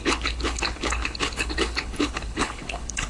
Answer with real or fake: fake